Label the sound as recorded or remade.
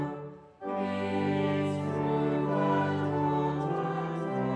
recorded